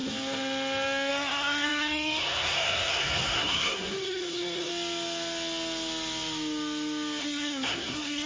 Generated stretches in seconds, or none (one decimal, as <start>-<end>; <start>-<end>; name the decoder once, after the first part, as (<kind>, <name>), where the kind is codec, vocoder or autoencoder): 1.1-4.7 (codec, SNAC); 7.2-8.3